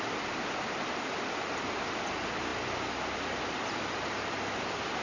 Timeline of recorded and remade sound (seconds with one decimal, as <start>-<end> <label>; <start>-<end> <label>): 0.0-5.0 recorded